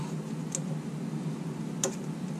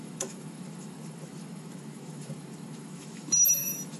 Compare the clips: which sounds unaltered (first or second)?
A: first